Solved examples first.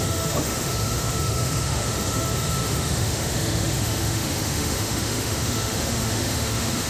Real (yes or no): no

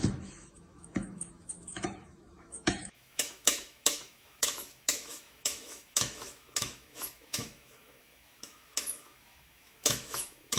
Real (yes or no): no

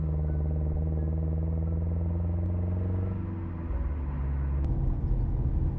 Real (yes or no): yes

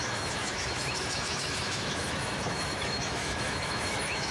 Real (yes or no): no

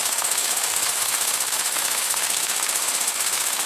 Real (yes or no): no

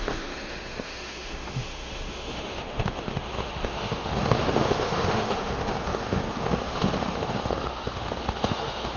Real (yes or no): no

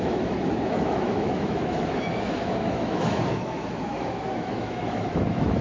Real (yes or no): no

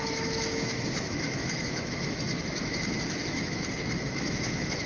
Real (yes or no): no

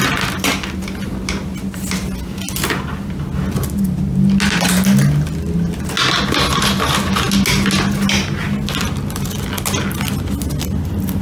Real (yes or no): yes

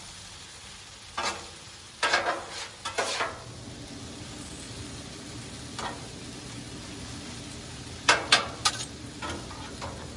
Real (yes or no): yes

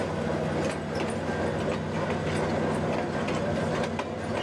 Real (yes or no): yes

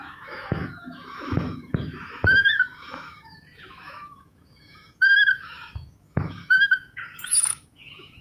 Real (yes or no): no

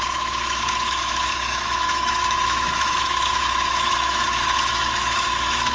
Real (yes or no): no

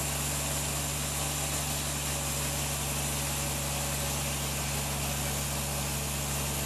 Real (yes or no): yes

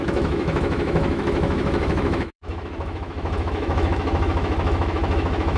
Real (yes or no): no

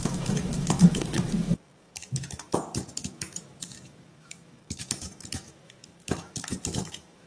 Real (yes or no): no